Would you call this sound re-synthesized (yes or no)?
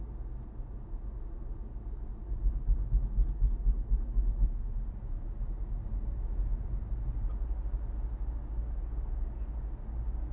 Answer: no